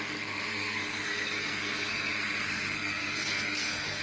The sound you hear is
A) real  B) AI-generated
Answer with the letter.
B